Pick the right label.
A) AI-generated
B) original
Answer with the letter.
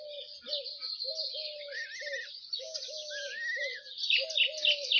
B